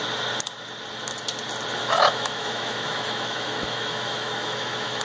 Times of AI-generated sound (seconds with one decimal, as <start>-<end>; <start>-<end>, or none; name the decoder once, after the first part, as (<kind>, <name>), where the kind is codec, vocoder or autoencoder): 1.8-5.0 (autoencoder, DAC-VAE)